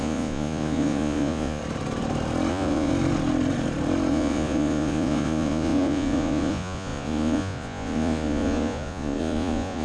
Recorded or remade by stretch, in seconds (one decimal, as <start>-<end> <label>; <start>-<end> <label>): 0.0-1.6 remade; 1.6-2.5 recorded; 2.5-2.9 remade; 2.9-4.1 recorded; 4.1-9.8 remade